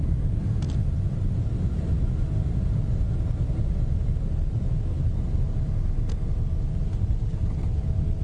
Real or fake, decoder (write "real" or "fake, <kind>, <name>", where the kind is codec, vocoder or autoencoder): real